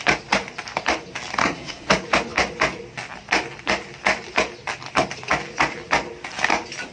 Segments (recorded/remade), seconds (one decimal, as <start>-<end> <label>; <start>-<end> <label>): 0.0-1.4 recorded; 1.4-1.9 remade; 1.9-6.9 recorded